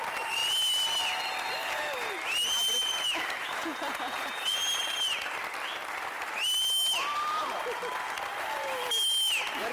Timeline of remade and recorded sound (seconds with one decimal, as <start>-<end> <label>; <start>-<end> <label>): 0.0-3.6 recorded; 3.6-4.6 remade; 4.6-9.7 recorded